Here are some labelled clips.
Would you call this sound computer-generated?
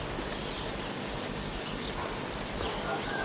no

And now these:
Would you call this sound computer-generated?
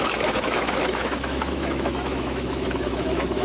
yes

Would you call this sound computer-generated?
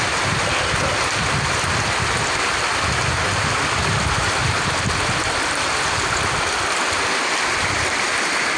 no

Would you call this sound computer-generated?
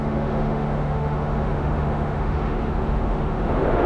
yes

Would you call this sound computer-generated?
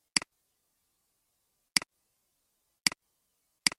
no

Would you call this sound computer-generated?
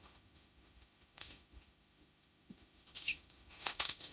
yes